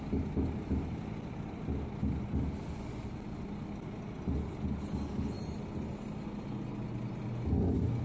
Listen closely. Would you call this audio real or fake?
real